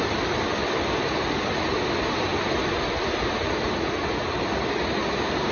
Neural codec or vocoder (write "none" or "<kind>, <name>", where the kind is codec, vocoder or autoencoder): none